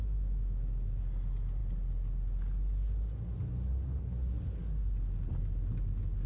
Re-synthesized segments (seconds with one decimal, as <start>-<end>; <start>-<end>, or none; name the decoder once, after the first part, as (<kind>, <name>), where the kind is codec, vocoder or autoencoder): 0.0-1.0 (autoencoder, DAC-VAE)

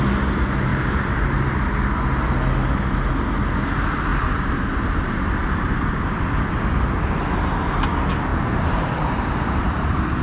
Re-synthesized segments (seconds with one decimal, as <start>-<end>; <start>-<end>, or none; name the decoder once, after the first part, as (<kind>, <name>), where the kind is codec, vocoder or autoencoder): 0.7-1.5 (vocoder, BigVGAN v2); 8.3-10.2

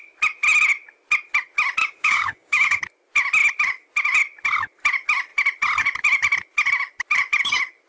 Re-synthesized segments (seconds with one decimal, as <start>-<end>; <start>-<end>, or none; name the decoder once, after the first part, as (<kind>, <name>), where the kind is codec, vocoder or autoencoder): 1.8-2.8 (codec, DAC)

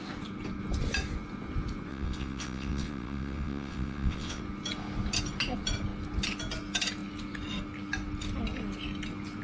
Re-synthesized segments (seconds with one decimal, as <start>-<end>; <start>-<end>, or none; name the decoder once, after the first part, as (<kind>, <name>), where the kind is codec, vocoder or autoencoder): 1.9-4.4 (vocoder, WaveNeXt)